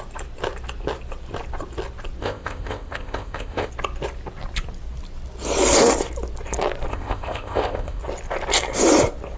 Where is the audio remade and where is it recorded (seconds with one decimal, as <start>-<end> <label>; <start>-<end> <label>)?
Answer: 0.0-2.2 recorded; 2.2-3.7 remade; 3.7-6.9 recorded; 6.9-8.0 remade; 8.0-9.4 recorded